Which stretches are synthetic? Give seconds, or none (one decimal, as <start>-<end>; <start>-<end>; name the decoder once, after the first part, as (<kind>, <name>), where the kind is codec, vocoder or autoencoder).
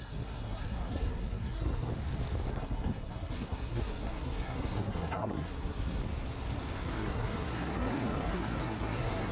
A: 0.0-1.9 (codec, SNAC); 2.5-6.0; 6.8-9.3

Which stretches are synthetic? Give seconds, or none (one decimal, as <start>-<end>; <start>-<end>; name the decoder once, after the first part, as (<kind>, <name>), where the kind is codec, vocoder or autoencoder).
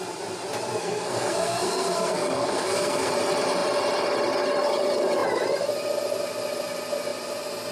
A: 0.8-3.1 (codec, SNAC)